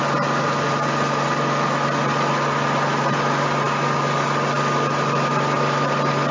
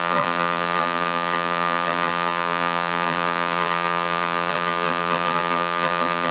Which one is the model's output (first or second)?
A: second